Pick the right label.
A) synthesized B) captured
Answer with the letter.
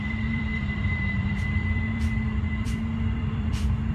A